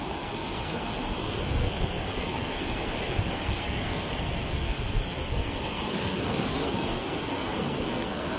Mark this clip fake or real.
fake